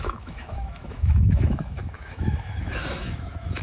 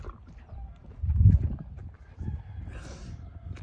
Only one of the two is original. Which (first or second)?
second